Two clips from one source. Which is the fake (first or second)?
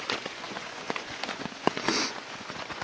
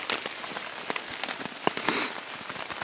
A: first